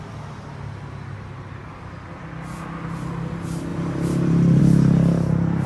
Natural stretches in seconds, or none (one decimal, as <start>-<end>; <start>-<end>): 0.0-3.7; 4.6-5.7